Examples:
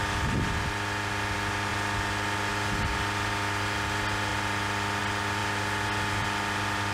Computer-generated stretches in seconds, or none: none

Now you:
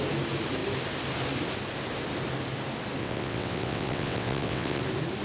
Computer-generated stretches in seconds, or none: 3.0-4.8 (vocoder, WaveNeXt)

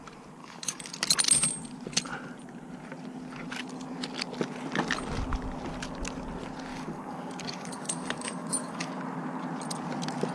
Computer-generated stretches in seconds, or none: 0.4-0.9 (codec, DAC); 6.7-8.9

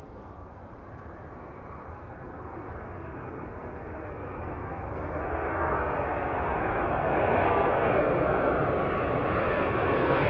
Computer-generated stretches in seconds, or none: 0.0-0.6 (codec, SNAC); 1.9-8.5; 9.4-10.3